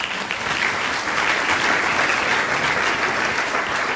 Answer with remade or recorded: recorded